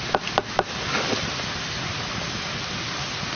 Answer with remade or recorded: recorded